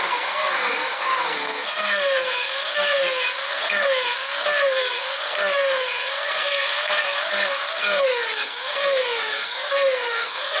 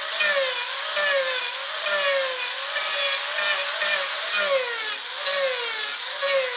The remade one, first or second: first